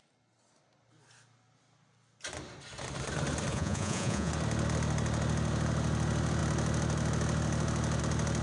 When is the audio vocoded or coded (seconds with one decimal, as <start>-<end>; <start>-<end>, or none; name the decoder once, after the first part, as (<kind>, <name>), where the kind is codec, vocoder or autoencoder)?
3.5-4.3 (vocoder, Vocos)